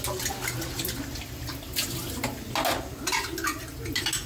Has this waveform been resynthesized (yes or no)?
no